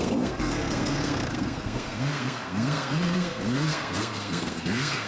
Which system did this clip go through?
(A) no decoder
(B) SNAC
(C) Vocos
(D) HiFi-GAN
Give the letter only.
B